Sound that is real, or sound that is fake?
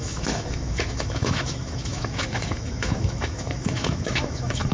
fake